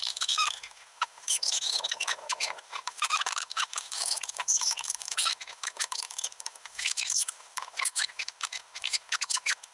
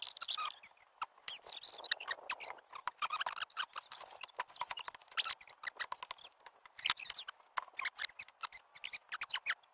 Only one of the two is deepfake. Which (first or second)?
first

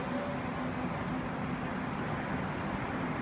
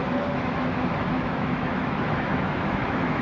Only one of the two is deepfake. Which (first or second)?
second